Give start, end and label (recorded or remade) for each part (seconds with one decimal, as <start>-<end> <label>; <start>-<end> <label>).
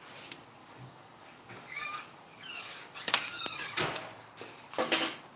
0.0-0.6 recorded; 0.6-3.8 remade; 3.8-5.4 recorded